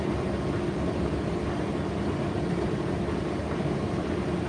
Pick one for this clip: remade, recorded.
recorded